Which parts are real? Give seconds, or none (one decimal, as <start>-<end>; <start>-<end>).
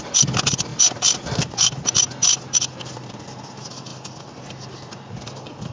0.0-5.7